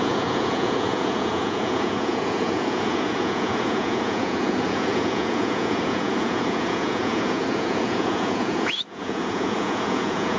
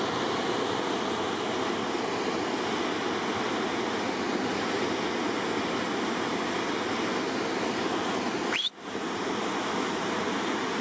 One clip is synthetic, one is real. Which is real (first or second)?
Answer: second